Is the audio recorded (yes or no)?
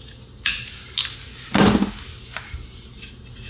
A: yes